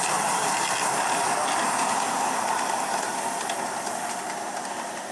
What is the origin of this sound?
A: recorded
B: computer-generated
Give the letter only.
A